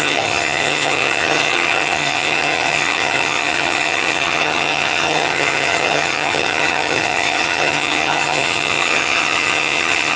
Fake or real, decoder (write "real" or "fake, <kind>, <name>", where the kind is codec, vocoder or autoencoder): fake, vocoder, HiFi-GAN